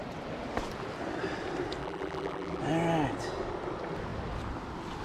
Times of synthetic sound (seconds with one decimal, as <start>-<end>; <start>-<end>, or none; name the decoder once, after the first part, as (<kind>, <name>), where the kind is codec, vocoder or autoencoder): 1.8-2.6 (vocoder, BigVGAN v2)